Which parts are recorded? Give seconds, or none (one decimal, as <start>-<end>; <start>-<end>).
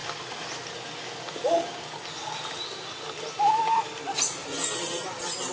0.0-5.5